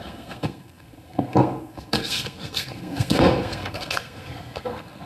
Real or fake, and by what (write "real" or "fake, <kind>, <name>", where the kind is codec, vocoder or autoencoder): fake, codec, SNAC